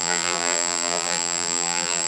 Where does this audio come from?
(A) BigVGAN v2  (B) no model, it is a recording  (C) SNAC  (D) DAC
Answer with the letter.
A